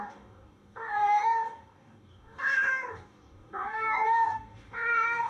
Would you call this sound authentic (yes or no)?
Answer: no